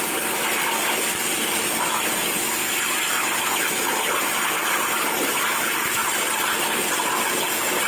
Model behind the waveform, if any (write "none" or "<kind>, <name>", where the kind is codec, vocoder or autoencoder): none